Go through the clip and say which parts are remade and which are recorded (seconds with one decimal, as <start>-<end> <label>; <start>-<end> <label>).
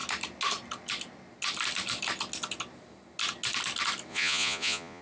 0.0-4.1 recorded; 4.1-5.0 remade